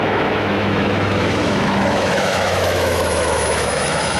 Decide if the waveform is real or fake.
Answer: fake